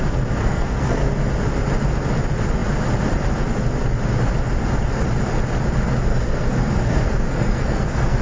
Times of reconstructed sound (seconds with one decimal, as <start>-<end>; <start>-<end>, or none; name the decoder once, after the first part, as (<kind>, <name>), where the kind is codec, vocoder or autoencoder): 0.4-1.2 (codec, SNAC); 6.1-8.2